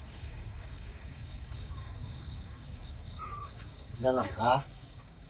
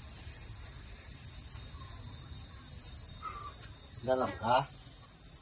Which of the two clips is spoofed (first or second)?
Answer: first